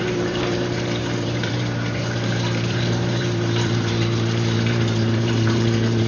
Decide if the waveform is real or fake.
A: fake